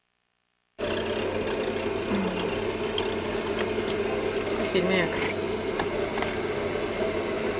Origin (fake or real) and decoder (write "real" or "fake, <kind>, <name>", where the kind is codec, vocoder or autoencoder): real